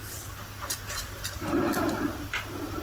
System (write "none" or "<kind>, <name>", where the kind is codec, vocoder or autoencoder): vocoder, BigVGAN v2